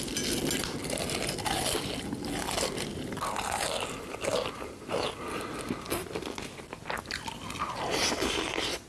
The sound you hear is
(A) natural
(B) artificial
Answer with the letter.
A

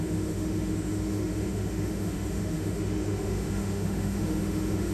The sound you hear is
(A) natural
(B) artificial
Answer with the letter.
B